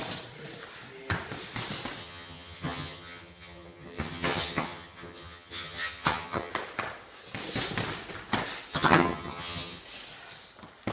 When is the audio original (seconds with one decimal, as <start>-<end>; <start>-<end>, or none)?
0.0-2.0; 6.5-8.7; 9.8-10.9